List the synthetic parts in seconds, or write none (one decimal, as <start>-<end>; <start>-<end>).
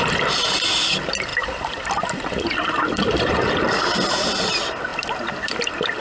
1.3-4.5; 4.9-6.0